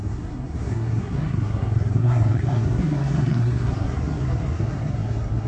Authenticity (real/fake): fake